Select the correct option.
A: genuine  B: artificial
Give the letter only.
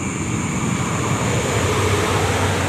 A